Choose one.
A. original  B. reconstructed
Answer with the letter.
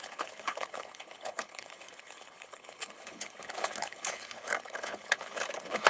B